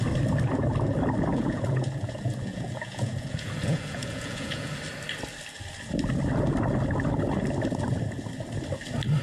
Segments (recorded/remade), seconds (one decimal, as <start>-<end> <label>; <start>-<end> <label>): 0.0-1.3 recorded; 1.3-4.7 remade; 4.7-9.2 recorded